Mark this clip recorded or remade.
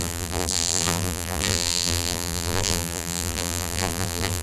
remade